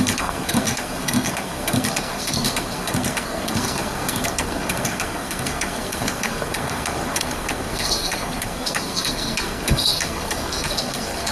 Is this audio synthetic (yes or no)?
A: yes